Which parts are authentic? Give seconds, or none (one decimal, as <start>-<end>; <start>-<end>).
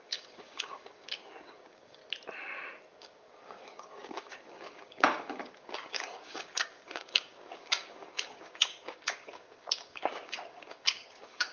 2.0-3.0